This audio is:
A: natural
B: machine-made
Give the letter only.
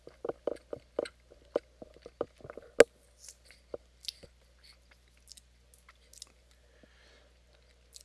A